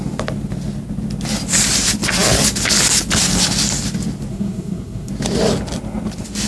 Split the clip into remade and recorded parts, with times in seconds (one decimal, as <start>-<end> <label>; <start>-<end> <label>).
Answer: 0.0-4.3 recorded; 4.3-5.1 remade; 5.1-6.5 recorded